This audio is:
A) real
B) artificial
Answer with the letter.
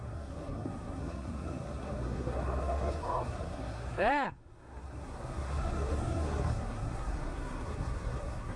B